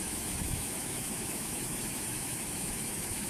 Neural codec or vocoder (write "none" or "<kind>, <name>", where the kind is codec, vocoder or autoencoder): autoencoder, DAC-VAE